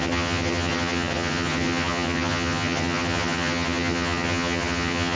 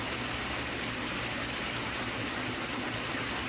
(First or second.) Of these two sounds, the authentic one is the second